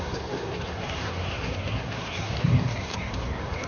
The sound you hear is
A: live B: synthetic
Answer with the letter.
B